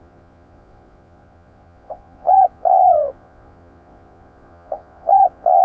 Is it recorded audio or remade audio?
remade